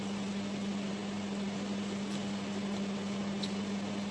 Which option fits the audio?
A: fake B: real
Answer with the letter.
B